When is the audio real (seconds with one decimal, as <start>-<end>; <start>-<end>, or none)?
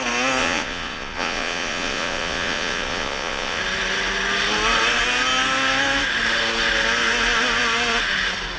0.0-0.4; 3.6-8.6